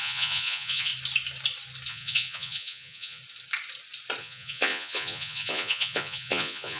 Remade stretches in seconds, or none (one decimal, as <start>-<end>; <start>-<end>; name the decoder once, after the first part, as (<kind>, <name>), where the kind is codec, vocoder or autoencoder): 0.0-0.9 (vocoder, Vocos); 1.9-3.2; 4.2-6.8